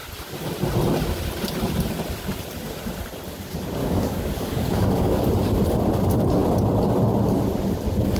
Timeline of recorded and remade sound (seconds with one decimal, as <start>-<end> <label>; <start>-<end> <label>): 0.0-3.8 recorded; 3.8-5.3 remade; 5.3-8.2 recorded